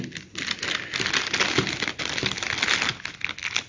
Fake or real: real